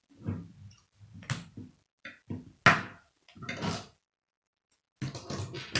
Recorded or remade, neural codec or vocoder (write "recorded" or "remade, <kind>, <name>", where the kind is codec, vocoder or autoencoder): recorded